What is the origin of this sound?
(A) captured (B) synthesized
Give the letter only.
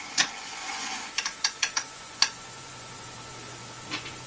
B